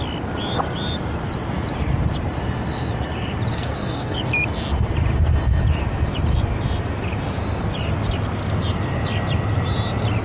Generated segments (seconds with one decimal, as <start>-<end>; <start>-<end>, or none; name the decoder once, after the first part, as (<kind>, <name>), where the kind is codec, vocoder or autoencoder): 3.5-4.2 (codec, SNAC)